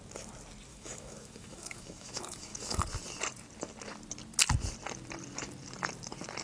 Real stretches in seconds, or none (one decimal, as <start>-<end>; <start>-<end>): 0.0-0.7; 2.8-6.4